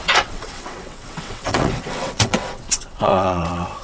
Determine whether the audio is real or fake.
fake